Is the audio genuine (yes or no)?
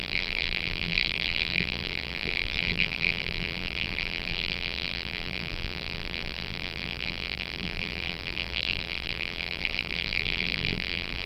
no